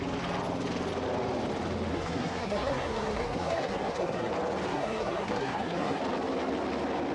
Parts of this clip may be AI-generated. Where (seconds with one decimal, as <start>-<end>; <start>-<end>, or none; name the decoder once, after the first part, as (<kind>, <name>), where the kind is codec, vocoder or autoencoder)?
1.9-4.3 (codec, SNAC); 4.7-6.0